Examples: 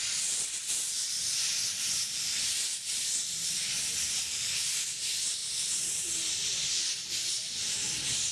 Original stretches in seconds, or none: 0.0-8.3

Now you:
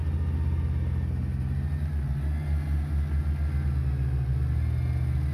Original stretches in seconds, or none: 0.0-5.3

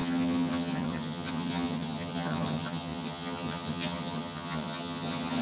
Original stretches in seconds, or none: none

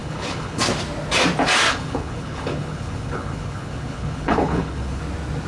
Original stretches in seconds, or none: 0.6-1.7; 5.0-5.5

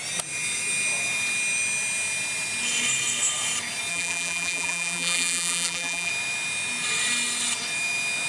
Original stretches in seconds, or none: 0.0-3.9; 6.1-8.3

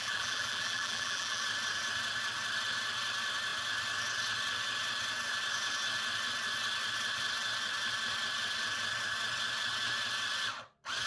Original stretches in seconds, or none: 1.4-11.1